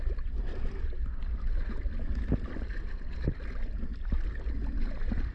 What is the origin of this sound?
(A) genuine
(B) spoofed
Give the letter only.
A